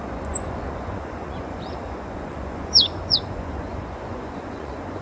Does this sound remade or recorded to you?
remade